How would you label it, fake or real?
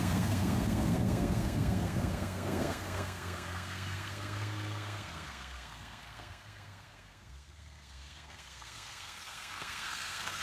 fake